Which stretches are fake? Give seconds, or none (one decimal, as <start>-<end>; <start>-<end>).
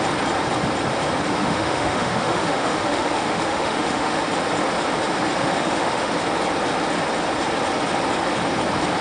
1.4-4.2; 5.4-6.1